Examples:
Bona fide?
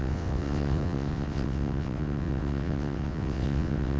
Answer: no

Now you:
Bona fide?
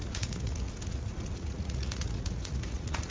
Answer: no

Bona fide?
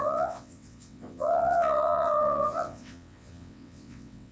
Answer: no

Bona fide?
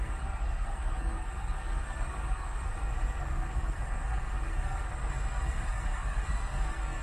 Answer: no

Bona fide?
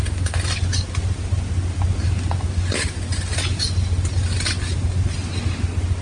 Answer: yes